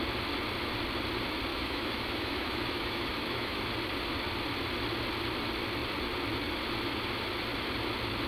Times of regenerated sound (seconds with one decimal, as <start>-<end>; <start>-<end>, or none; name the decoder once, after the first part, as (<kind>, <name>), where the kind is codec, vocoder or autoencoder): 1.5-3.6 (autoencoder, DAC-VAE)